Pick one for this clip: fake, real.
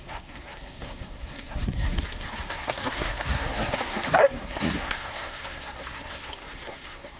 fake